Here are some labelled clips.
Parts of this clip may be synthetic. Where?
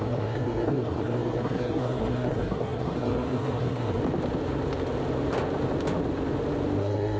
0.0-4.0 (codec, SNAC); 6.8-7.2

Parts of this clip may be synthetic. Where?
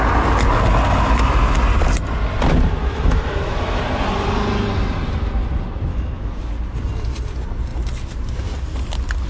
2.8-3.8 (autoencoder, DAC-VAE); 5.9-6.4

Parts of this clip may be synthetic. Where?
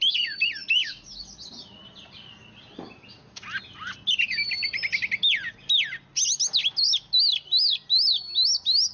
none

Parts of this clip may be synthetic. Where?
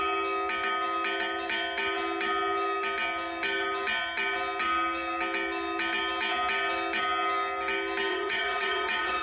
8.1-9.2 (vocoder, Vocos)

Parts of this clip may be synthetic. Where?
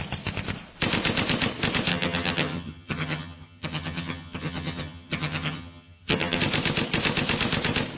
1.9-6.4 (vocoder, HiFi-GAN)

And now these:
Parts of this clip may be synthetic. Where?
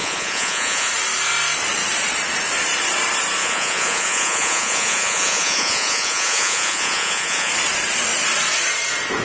0.0-0.9 (vocoder, Vocos); 3.4-7.5